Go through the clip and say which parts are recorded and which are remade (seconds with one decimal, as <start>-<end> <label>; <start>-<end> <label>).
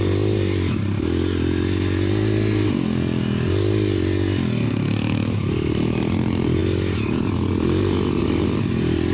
0.0-9.1 recorded